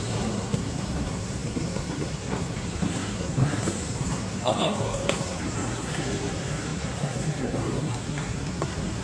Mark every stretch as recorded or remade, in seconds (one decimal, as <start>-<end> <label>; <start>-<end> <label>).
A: 0.0-9.0 remade